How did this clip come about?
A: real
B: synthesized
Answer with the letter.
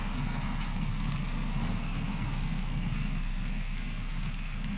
B